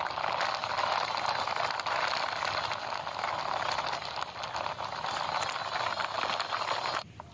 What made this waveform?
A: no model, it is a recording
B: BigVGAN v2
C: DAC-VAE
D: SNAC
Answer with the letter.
A